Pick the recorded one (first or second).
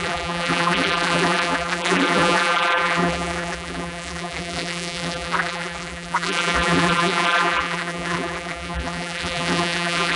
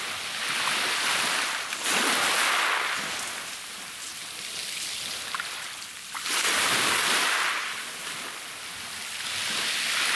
second